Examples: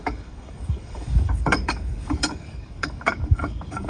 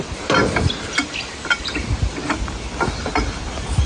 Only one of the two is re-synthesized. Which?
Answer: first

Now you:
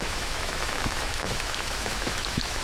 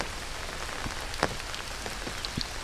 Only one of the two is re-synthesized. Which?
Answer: first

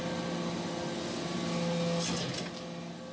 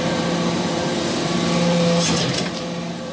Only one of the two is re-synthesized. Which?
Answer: second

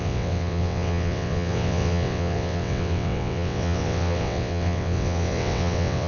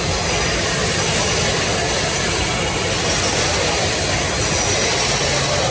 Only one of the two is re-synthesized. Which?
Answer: first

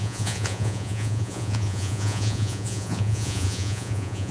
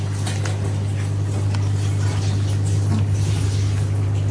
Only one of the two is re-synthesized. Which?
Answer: first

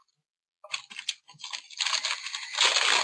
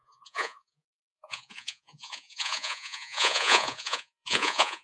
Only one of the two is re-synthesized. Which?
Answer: second